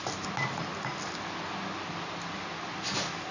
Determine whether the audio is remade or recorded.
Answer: recorded